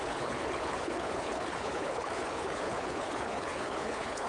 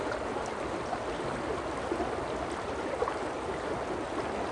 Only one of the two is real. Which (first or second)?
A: second